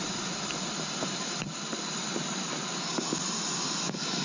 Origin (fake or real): real